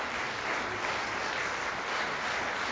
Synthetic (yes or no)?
no